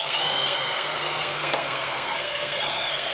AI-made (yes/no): yes